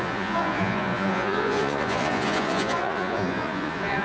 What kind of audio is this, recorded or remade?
remade